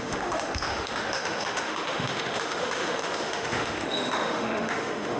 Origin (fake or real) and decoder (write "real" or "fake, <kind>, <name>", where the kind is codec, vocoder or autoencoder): fake, autoencoder, DAC-VAE